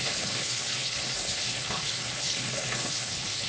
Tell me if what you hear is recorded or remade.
remade